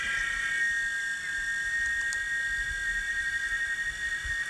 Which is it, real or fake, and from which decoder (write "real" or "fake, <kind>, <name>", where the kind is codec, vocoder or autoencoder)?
real